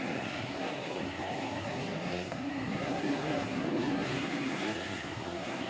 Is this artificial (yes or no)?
yes